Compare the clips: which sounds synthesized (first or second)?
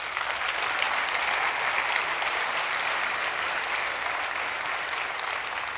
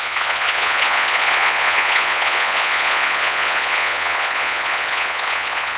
second